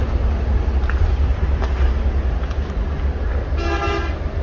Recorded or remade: recorded